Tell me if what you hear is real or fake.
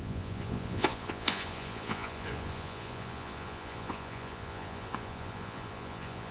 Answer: fake